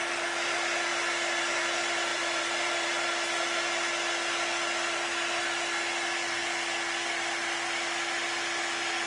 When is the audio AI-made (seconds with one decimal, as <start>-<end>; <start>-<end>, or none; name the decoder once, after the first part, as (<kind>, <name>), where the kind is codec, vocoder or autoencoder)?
2.1-2.9 (vocoder, BigVGAN v2)